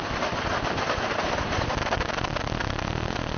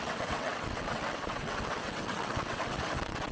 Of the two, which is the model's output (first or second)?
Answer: second